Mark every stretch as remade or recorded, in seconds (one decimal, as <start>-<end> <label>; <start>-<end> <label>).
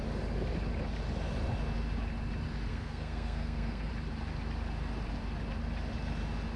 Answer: 0.0-2.7 recorded; 2.7-3.9 remade; 3.9-6.6 recorded